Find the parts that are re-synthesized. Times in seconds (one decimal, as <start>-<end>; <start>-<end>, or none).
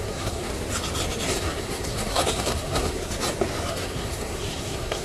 0.0-0.5; 1.4-3.1; 3.7-5.0